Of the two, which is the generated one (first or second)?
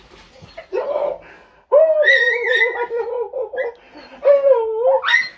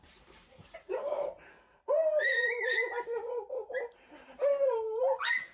second